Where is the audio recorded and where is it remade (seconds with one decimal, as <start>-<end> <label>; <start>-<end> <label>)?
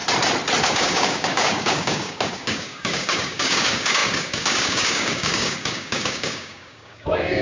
0.0-0.6 recorded; 0.6-7.4 remade